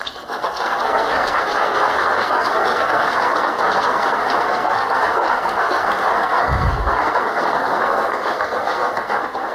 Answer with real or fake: fake